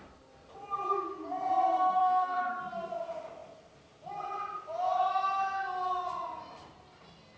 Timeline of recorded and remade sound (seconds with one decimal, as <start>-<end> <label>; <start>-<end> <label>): 0.0-2.0 recorded; 2.0-2.5 remade; 2.5-7.4 recorded